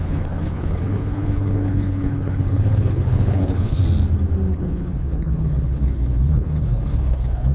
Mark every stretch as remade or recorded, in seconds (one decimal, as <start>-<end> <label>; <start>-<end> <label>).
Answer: 0.0-3.8 remade; 3.8-4.5 recorded; 4.5-7.5 remade